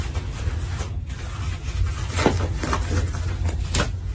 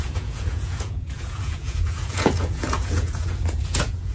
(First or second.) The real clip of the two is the first